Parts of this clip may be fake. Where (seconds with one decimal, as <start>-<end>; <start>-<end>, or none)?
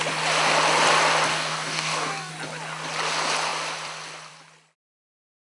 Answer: 1.3-2.3